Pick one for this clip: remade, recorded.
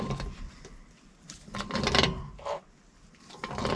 recorded